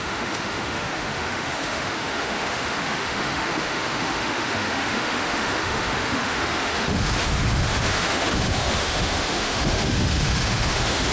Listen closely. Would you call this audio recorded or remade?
remade